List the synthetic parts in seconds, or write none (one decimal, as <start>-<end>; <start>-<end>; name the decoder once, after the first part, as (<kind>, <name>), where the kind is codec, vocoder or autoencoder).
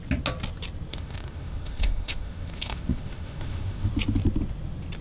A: 0.9-3.9 (autoencoder, DAC-VAE)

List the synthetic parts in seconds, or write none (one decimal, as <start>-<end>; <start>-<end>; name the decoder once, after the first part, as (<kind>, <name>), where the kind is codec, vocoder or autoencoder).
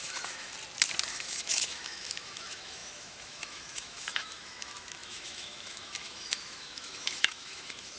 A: 0.0-0.5 (autoencoder, DAC-VAE); 1.1-8.0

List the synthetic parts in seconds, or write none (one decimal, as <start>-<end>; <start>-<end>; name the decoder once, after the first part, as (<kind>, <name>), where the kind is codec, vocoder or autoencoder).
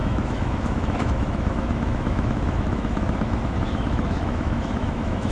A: 0.0-5.3 (autoencoder, DAC-VAE)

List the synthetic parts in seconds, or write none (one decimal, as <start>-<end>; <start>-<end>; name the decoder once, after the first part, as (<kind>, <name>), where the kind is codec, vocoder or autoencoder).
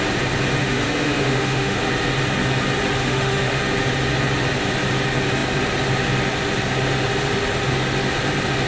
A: 0.6-1.8 (autoencoder, DAC-VAE); 3.0-3.6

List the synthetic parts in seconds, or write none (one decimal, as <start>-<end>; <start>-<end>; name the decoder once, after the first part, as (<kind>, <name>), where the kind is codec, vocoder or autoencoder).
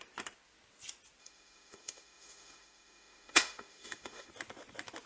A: 1.2-4.3 (autoencoder, DAC-VAE)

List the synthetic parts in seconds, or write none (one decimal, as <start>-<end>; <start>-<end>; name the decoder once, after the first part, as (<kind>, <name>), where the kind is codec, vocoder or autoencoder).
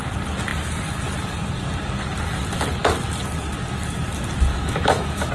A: 4.5-5.3 (autoencoder, DAC-VAE)